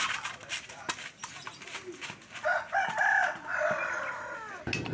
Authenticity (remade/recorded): recorded